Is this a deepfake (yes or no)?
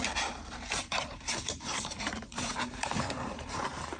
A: yes